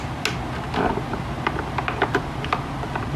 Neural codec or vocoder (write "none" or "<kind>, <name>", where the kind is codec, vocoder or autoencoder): none